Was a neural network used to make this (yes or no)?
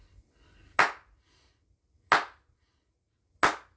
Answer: no